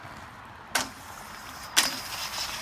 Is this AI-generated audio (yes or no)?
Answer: no